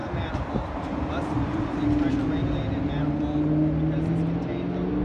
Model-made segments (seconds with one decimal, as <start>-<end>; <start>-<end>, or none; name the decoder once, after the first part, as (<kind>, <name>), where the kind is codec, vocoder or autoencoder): none